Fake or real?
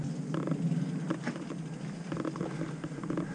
real